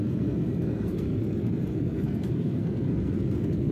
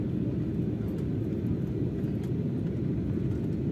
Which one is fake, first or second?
first